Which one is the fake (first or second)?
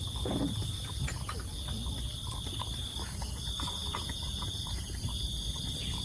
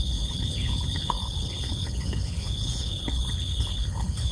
second